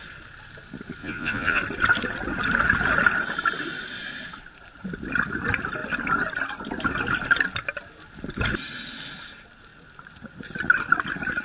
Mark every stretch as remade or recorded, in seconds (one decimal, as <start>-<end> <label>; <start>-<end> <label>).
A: 0.0-1.0 recorded; 1.0-1.6 remade; 1.6-11.4 recorded